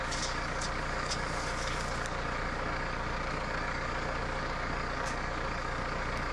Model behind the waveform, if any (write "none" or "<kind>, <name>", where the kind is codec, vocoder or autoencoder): codec, DAC